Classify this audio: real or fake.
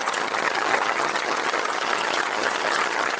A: fake